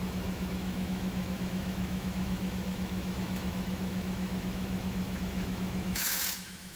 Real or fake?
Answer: fake